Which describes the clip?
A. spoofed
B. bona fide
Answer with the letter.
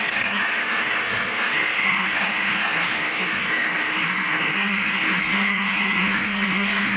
A